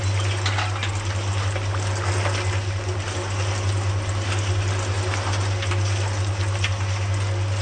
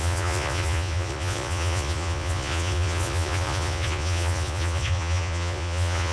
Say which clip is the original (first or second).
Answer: first